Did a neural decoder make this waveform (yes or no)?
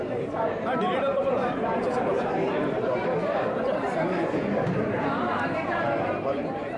yes